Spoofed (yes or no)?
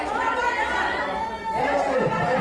yes